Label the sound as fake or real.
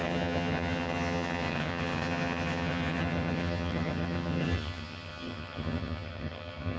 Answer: fake